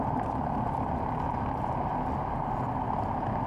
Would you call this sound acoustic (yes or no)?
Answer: yes